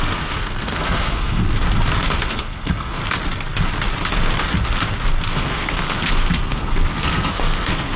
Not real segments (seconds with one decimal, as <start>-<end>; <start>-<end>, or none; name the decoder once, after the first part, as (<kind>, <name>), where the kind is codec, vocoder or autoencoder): 0.0-1.4 (codec, SNAC); 2.2-3.0; 5.3-8.0